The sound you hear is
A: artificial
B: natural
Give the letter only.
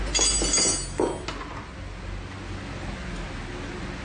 B